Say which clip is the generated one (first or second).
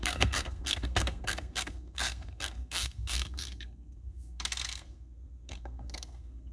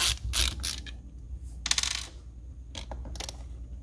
first